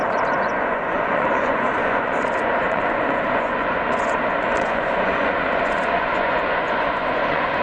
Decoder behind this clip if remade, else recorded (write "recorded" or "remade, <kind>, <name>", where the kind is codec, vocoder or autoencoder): remade, vocoder, Vocos